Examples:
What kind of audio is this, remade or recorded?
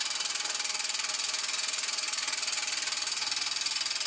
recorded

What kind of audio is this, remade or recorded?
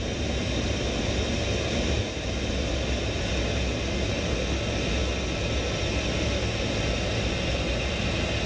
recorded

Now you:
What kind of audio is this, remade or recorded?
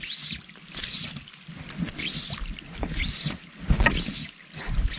recorded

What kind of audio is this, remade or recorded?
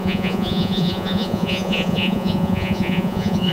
remade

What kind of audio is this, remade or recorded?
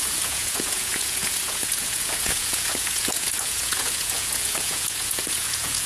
remade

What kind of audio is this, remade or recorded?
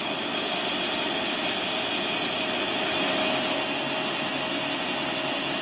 recorded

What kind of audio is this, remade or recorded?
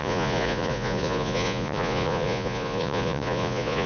remade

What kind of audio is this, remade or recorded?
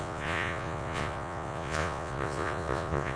remade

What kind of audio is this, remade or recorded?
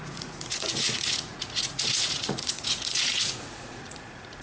remade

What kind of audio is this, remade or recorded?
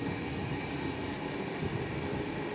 recorded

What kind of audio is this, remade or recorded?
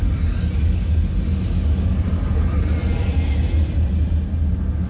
recorded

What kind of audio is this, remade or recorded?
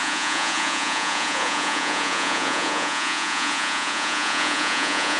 remade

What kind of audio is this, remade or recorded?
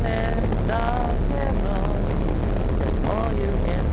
recorded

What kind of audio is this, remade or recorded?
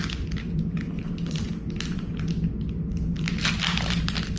recorded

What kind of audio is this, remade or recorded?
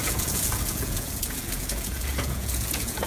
remade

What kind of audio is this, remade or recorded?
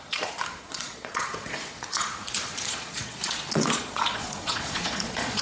remade